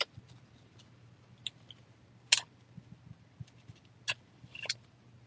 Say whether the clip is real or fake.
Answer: real